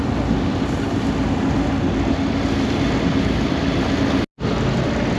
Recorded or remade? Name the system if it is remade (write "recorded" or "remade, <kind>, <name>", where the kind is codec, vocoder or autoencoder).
recorded